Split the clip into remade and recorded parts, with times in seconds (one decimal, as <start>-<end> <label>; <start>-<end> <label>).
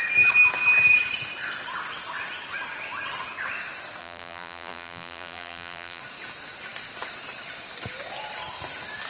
0.0-4.0 recorded; 4.0-6.0 remade; 6.0-9.1 recorded